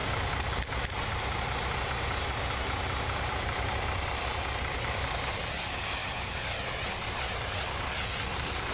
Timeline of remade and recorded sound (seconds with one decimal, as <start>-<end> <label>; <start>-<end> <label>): 0.0-4.4 recorded; 4.4-6.0 remade; 6.0-6.9 recorded; 6.9-8.7 remade